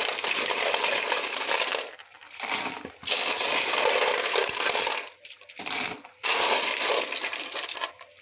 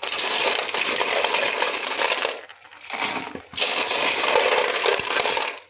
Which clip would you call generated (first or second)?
first